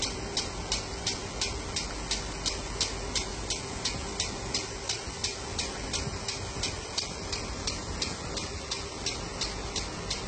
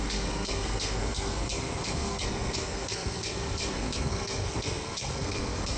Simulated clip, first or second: second